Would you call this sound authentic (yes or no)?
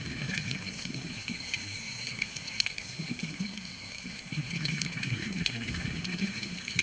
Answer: no